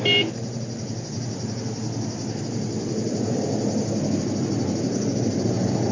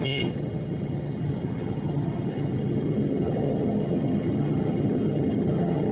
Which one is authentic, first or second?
first